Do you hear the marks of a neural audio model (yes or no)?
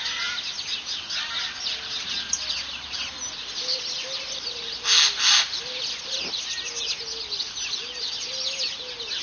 no